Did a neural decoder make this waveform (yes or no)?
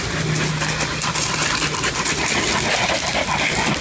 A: no